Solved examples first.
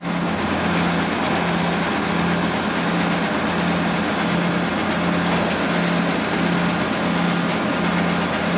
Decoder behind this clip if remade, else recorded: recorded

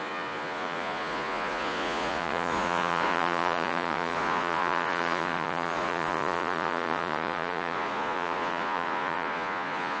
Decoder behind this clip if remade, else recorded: remade, vocoder, Vocos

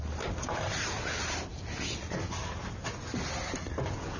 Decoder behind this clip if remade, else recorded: recorded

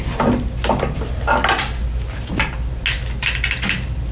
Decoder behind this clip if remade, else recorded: recorded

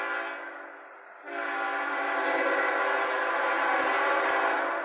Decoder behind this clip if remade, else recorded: recorded